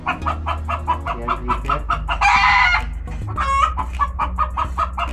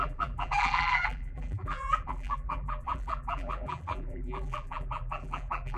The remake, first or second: second